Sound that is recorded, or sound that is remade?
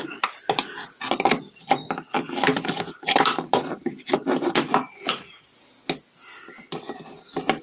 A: recorded